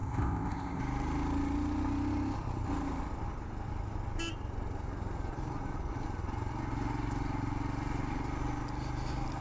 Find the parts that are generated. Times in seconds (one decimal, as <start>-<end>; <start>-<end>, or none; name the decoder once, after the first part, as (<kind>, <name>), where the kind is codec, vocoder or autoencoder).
0.0-0.8 (codec, ZipCodec)

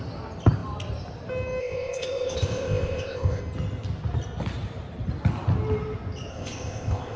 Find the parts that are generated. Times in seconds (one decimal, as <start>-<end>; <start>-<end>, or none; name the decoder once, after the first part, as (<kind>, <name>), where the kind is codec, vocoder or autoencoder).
1.6-3.4 (codec, ZipCodec); 6.3-7.2

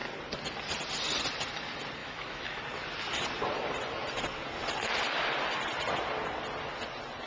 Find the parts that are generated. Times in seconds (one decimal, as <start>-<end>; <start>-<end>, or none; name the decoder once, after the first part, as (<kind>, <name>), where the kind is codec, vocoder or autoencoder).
2.0-2.6 (autoencoder, DAC-VAE)

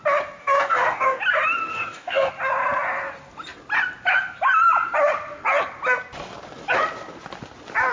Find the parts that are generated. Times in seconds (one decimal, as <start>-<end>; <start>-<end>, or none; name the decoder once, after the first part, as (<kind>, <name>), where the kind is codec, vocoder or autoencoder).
0.4-1.2 (codec, DAC); 1.7-2.3

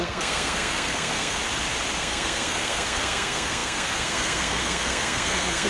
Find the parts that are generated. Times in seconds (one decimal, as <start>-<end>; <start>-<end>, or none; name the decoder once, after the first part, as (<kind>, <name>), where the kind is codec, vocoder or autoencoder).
0.0-1.4 (codec, SNAC); 2.0-5.7